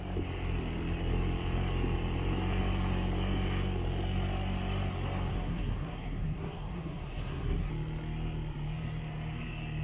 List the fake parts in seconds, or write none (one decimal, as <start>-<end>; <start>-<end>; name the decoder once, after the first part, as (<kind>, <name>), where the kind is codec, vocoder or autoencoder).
5.3-7.7 (codec, SNAC)